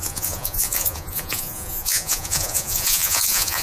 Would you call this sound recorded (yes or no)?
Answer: no